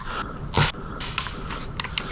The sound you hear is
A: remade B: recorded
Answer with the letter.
B